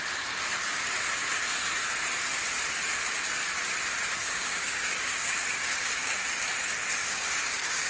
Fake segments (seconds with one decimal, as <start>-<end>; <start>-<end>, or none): 4.2-6.0; 7.0-7.9